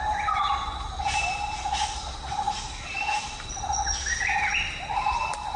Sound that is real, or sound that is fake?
real